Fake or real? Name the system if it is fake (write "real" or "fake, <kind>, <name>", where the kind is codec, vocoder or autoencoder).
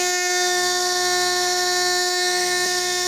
fake, autoencoder, DAC-VAE